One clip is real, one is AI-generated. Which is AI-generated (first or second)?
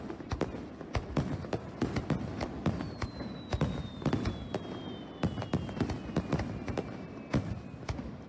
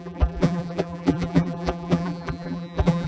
second